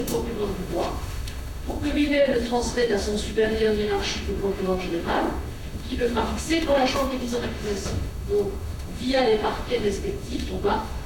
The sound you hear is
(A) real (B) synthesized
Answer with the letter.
B